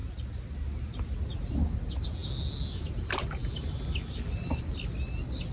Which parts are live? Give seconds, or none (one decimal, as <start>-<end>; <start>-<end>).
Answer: 0.0-5.5